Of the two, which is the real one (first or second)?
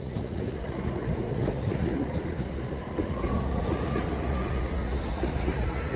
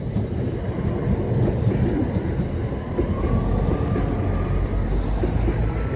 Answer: second